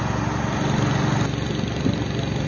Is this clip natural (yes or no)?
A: yes